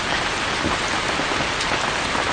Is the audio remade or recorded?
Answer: recorded